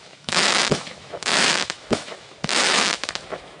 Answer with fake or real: fake